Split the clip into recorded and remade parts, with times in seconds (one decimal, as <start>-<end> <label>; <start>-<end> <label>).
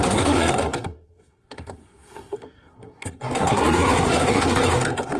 0.0-5.2 remade